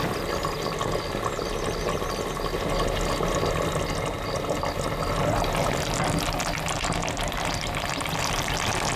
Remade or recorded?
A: recorded